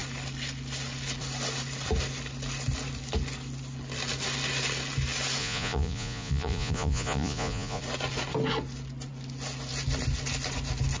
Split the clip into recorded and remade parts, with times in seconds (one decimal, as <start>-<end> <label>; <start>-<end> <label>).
0.0-5.4 recorded; 5.4-7.8 remade; 7.8-11.0 recorded